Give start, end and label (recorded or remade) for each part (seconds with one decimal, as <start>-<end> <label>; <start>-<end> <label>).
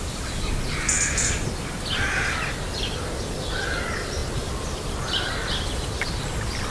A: 0.0-6.7 recorded